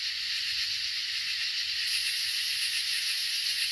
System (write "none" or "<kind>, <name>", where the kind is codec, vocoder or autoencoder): vocoder, Vocos